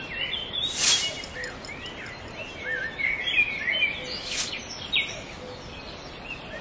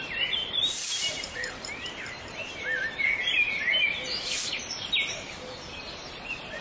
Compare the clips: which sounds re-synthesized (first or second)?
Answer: second